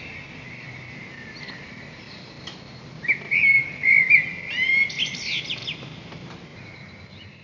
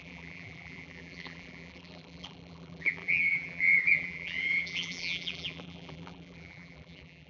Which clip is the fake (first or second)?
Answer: second